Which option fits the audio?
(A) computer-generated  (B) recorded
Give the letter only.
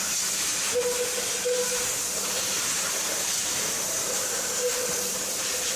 A